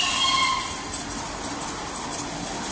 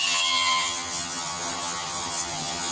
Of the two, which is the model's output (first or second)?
second